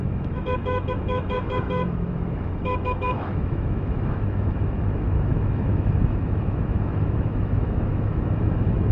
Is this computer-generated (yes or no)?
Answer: yes